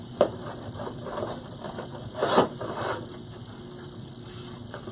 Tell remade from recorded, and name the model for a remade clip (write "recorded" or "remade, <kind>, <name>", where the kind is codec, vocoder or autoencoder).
recorded